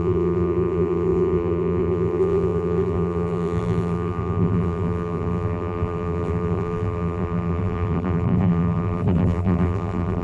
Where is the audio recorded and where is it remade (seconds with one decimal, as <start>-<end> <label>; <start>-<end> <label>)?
0.0-10.2 remade